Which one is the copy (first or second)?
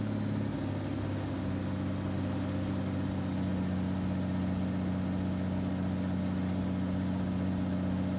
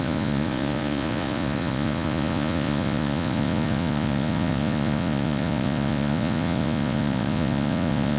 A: second